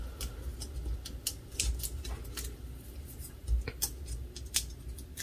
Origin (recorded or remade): recorded